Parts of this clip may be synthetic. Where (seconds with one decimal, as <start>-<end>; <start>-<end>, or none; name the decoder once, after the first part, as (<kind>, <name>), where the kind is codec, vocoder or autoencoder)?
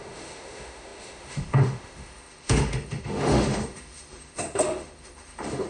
0.0-5.7 (autoencoder, DAC-VAE)